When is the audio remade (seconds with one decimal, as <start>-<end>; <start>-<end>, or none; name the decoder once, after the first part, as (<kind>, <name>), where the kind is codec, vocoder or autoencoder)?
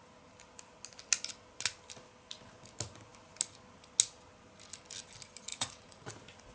5.5-6.1 (vocoder, Vocos)